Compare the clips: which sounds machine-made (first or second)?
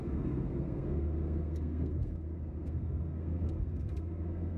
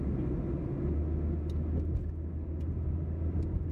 first